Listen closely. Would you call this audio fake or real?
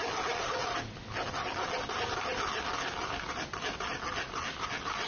real